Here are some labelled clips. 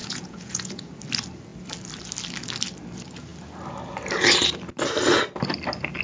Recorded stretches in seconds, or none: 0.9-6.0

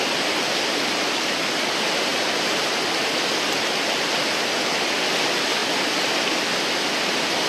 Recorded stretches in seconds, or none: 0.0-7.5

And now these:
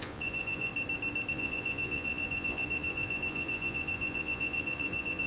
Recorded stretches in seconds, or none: 0.7-1.3

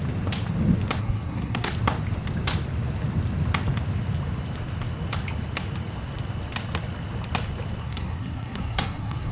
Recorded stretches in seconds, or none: 0.0-1.0; 1.7-7.8

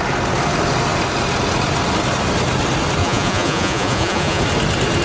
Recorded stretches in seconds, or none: 0.0-3.0; 4.4-5.0

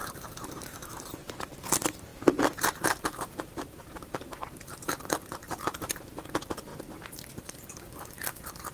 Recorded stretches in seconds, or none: none

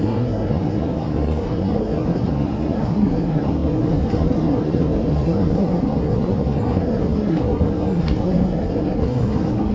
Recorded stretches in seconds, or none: none

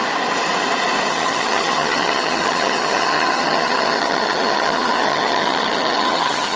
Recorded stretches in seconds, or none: 0.0-1.1